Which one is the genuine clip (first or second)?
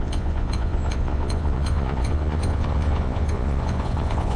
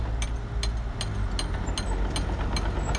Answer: second